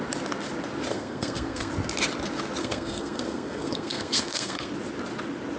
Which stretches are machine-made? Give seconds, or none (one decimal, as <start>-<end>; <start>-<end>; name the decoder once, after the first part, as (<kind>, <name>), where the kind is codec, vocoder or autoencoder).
0.9-1.7 (codec, SNAC); 2.6-4.7